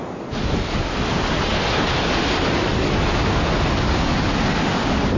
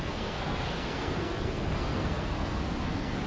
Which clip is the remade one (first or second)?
second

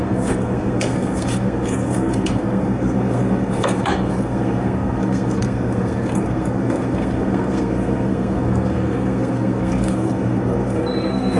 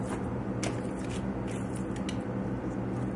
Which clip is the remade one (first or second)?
first